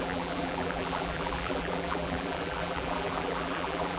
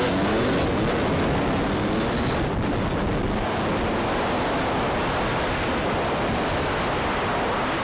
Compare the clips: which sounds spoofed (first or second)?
first